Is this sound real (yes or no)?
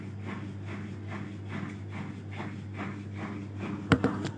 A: yes